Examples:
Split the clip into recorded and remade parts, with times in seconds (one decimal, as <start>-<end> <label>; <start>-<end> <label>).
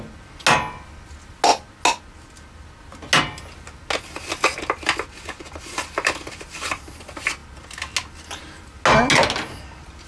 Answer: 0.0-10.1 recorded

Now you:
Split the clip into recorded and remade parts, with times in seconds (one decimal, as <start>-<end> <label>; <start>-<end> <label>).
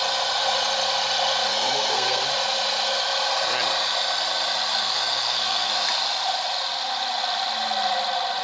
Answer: 0.0-1.5 recorded; 1.5-2.2 remade; 2.2-4.8 recorded; 4.8-5.7 remade; 5.7-8.4 recorded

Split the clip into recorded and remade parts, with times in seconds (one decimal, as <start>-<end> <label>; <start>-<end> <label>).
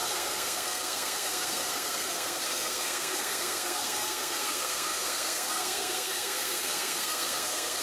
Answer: 0.0-7.8 remade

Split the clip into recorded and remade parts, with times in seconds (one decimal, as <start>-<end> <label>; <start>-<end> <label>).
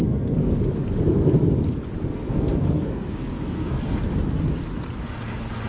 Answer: 0.0-0.5 remade; 0.5-2.1 recorded; 2.1-4.0 remade; 4.0-5.7 recorded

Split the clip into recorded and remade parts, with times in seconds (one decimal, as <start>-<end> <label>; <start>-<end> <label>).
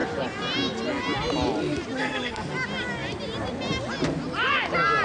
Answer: 0.0-2.0 recorded; 2.0-2.5 remade; 2.5-5.0 recorded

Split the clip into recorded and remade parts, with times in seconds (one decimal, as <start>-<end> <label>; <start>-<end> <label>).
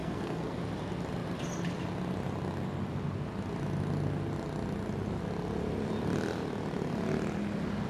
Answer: 0.0-0.6 remade; 0.6-7.9 recorded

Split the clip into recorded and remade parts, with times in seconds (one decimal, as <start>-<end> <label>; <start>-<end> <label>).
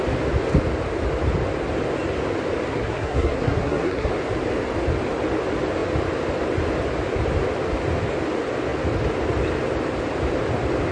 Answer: 0.0-2.7 recorded; 2.7-4.1 remade; 4.1-10.9 recorded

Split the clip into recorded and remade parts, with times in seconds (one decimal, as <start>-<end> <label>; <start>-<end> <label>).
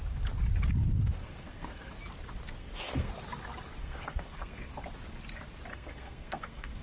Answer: 0.0-1.2 recorded; 1.2-1.9 remade; 1.9-2.6 recorded; 2.6-3.1 remade; 3.1-3.8 recorded; 3.8-4.7 remade; 4.7-5.7 recorded; 5.7-6.8 remade